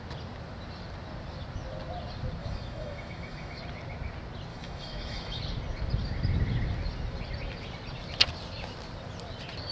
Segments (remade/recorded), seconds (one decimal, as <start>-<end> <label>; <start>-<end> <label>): 0.0-2.4 recorded; 2.4-3.6 remade; 3.6-4.5 recorded; 4.5-5.4 remade; 5.4-9.7 recorded